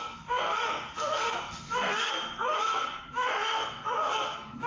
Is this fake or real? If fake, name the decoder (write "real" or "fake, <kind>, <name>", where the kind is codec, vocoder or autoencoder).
fake, codec, SNAC